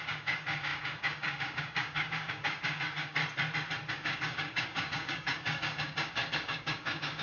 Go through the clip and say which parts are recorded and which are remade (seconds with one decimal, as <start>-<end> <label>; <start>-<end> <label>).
0.0-3.2 remade; 3.2-3.9 recorded; 3.9-7.2 remade